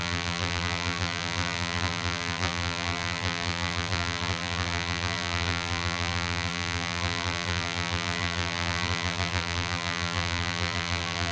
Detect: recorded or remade remade